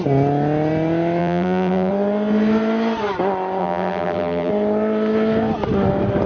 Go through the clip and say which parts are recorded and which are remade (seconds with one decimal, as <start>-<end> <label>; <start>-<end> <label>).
0.0-1.2 recorded; 1.2-1.9 remade; 1.9-3.6 recorded; 3.6-4.5 remade; 4.5-6.3 recorded